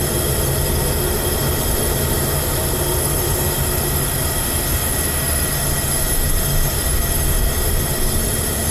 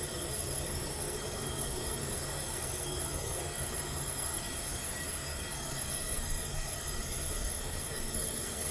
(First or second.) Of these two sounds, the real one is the first